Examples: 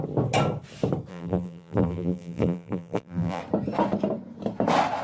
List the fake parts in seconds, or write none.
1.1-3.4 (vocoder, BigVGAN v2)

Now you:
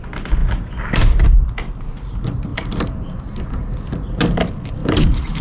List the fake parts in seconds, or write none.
2.5-4.1 (vocoder, BigVGAN v2); 4.8-5.4

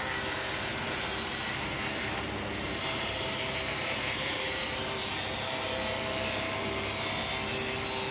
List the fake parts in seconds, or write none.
0.7-5.0 (vocoder, BigVGAN v2)